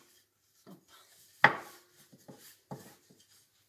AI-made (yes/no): no